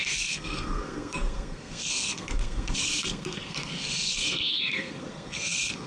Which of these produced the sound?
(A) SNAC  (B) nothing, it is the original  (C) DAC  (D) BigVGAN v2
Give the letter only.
A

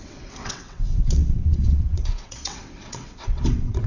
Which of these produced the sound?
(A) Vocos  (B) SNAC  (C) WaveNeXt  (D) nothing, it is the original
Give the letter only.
C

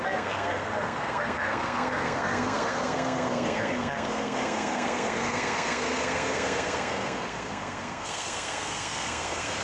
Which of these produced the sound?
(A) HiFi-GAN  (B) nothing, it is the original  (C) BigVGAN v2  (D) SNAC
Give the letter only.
D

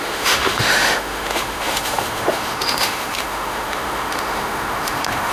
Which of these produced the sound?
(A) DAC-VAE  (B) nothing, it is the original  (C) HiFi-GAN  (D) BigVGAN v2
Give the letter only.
A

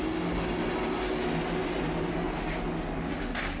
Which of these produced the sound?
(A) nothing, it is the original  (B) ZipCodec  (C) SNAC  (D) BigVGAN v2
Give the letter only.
A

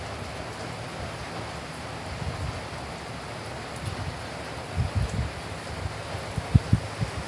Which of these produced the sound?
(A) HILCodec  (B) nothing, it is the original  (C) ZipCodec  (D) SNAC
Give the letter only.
B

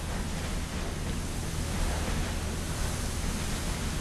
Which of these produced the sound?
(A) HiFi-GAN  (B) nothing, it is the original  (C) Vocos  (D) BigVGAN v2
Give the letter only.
B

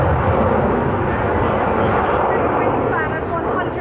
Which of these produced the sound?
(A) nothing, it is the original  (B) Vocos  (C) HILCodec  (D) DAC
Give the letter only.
A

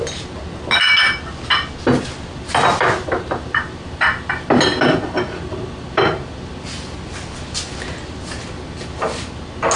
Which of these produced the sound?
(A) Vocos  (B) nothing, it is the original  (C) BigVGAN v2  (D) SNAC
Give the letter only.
B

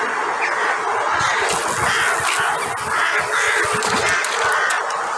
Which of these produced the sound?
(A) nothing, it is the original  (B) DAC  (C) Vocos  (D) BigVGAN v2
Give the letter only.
A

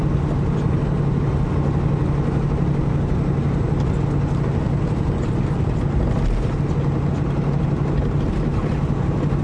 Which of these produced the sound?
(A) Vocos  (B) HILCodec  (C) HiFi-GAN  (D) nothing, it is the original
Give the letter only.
D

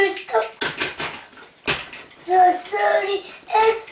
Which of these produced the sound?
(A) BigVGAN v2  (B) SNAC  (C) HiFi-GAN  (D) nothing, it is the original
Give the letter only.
D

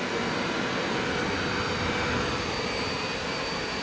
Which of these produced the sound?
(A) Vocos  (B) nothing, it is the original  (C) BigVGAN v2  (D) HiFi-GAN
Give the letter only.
B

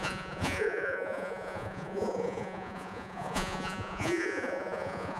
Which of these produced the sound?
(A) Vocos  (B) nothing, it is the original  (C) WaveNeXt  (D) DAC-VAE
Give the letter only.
A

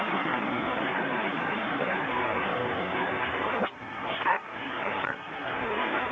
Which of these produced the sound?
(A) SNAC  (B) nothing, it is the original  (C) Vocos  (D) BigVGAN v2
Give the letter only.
A